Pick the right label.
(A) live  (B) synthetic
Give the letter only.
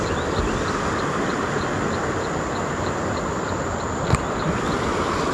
A